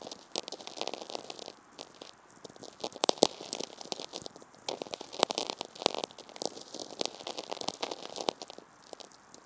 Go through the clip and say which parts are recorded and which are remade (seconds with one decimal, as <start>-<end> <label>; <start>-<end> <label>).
0.0-2.6 recorded; 2.6-3.2 remade; 3.2-4.1 recorded; 4.1-5.8 remade; 5.8-9.5 recorded